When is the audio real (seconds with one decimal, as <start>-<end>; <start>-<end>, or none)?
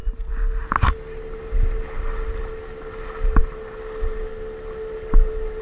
0.0-5.6